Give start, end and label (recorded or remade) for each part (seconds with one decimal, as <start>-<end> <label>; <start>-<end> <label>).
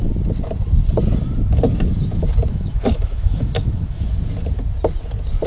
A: 0.0-2.5 recorded; 2.5-4.1 remade; 4.1-5.5 recorded